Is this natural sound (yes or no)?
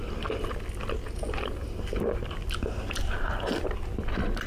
yes